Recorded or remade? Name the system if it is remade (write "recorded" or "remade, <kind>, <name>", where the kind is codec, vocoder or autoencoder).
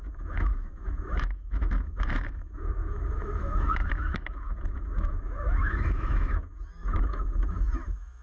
remade, autoencoder, DAC-VAE